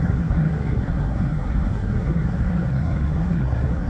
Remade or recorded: remade